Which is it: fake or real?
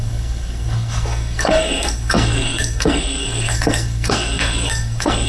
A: fake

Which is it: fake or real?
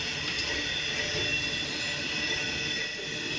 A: real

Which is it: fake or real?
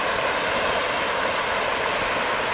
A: real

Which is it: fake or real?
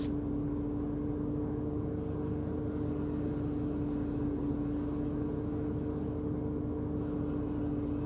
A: real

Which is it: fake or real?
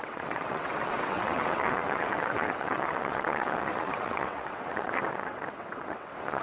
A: fake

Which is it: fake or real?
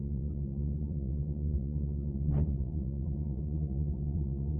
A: fake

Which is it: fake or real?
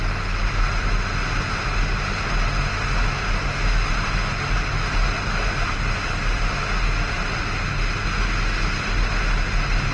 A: real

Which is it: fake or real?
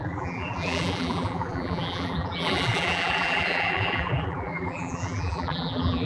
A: fake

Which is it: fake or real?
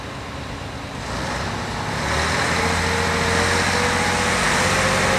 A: real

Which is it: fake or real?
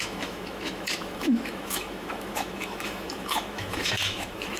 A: fake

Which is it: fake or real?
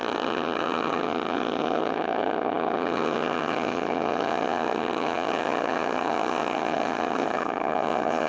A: fake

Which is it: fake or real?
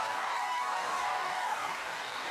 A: fake